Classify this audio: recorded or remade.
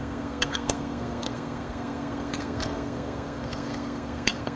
remade